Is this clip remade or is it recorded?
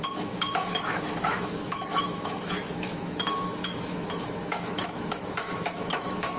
remade